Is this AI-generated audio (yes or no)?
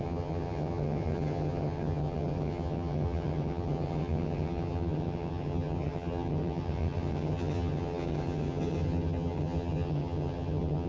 yes